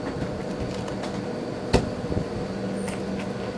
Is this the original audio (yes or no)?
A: yes